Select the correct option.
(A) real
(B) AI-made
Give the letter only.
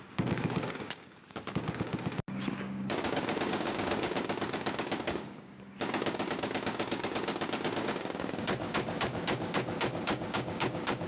B